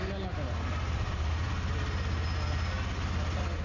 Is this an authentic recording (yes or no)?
yes